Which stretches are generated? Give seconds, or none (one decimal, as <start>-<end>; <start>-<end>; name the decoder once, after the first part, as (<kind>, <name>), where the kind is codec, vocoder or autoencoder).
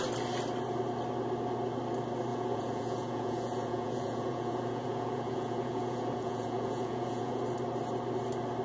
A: 2.3-7.4 (vocoder, Vocos)